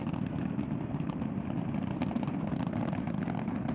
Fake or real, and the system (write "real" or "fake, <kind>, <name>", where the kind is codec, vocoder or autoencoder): real